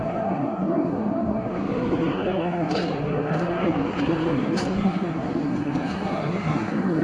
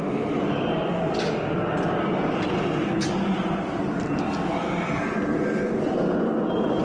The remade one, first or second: first